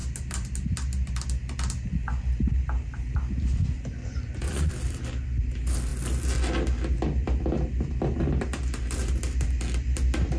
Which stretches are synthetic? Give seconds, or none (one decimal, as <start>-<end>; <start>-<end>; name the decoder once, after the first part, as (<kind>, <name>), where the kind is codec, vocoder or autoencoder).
4.0-4.7 (vocoder, Vocos)